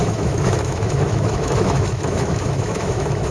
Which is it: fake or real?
fake